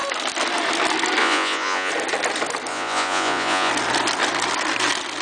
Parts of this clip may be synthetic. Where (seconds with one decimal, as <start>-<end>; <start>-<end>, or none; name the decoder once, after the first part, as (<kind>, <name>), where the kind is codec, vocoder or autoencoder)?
1.2-1.9 (vocoder, Vocos); 2.7-3.7